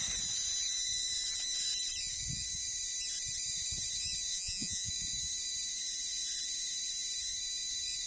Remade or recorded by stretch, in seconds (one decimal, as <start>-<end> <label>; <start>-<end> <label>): 0.0-4.3 recorded; 4.3-4.9 remade; 4.9-8.1 recorded